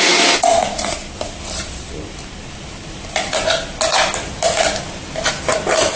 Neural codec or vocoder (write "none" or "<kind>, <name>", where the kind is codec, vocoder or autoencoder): none